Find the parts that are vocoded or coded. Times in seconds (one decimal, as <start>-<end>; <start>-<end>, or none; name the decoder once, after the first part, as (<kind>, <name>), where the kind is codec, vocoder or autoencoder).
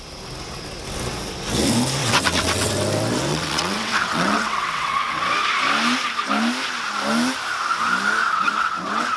2.0-2.7 (vocoder, WaveNeXt); 3.3-5.2; 8.2-9.2